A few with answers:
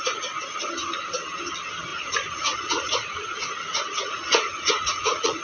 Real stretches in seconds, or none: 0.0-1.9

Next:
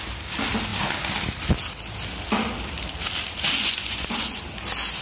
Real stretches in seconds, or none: 0.0-3.6; 4.4-5.0

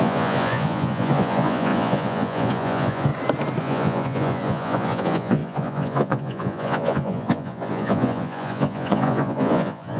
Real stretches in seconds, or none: 3.1-3.6